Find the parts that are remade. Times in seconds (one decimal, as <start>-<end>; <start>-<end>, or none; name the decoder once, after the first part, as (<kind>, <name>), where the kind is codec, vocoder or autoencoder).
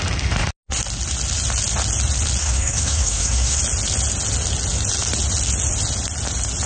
2.4-3.6 (codec, SNAC)